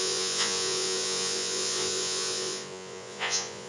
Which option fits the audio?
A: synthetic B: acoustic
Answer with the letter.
A